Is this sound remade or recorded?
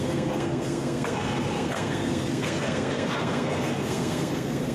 remade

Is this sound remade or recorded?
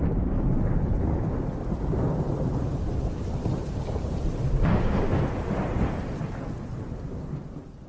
recorded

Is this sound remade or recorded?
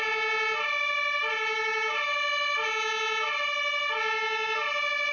recorded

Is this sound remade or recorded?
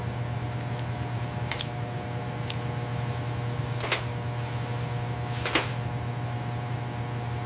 recorded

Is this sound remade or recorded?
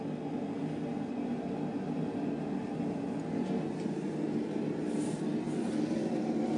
recorded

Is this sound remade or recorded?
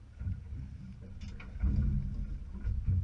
recorded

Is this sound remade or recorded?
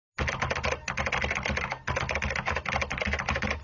recorded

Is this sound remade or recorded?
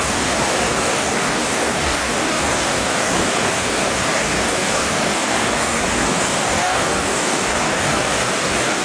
remade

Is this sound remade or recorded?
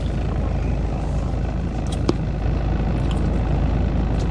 recorded